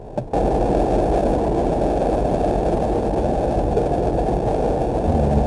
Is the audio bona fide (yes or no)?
yes